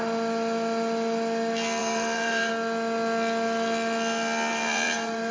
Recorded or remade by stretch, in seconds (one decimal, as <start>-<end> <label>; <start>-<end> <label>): 0.0-1.8 recorded; 1.8-2.5 remade; 2.5-4.5 recorded; 4.5-5.3 remade